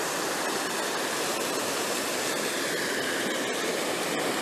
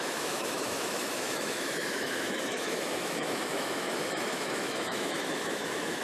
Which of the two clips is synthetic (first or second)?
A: second